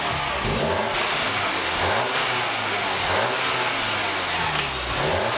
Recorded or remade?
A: recorded